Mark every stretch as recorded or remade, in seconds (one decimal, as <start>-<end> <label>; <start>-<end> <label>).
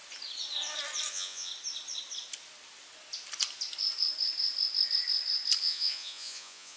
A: 0.0-1.1 recorded; 1.1-1.5 remade; 1.5-5.6 recorded; 5.6-6.8 remade